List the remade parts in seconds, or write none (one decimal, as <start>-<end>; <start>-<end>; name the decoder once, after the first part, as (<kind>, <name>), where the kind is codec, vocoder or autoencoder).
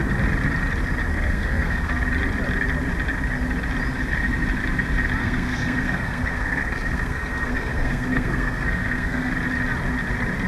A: 1.1-1.9 (codec, SNAC); 5.2-9.3